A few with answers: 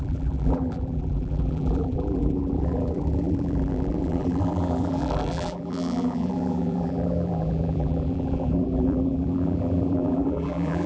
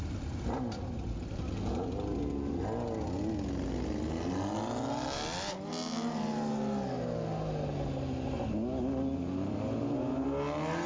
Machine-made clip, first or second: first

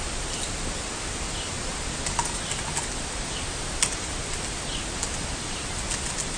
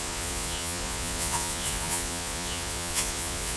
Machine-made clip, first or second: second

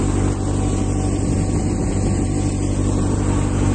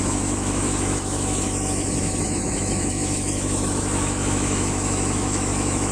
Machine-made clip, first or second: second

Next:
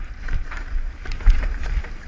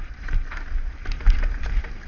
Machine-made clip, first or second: first